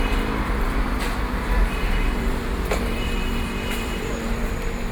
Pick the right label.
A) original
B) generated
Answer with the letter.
B